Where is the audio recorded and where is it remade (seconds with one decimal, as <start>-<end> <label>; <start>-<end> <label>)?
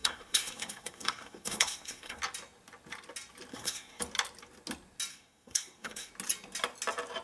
0.0-2.2 remade; 2.2-3.5 recorded; 3.5-4.0 remade; 4.0-5.1 recorded; 5.1-6.1 remade; 6.1-7.2 recorded